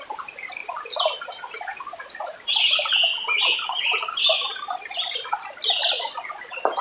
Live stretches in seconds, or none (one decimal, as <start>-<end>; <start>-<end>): 3.1-6.8